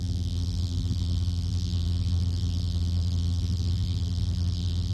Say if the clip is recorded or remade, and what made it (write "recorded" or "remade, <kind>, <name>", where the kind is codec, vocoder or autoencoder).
remade, vocoder, BigVGAN v2